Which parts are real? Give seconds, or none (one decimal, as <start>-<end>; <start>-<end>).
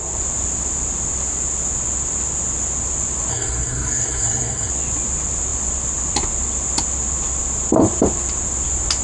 0.0-3.3; 4.7-9.0